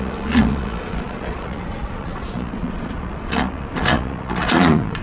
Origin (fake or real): fake